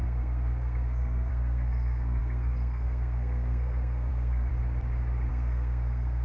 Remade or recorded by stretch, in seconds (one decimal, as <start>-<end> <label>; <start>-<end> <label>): 0.0-4.5 remade; 4.5-5.3 recorded; 5.3-6.2 remade